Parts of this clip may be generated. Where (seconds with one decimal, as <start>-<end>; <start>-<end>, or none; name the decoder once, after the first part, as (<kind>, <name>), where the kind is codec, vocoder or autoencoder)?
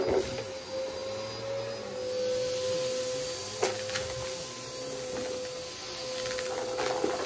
none